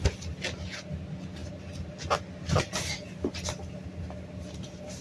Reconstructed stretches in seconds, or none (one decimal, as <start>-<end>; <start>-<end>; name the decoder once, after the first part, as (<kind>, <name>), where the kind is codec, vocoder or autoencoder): none